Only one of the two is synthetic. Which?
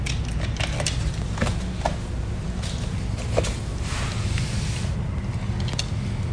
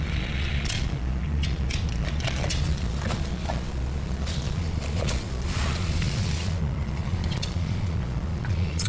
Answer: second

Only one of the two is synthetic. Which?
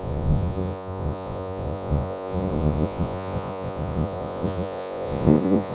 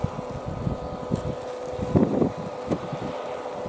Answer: first